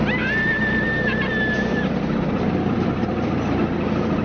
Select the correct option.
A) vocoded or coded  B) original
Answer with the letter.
B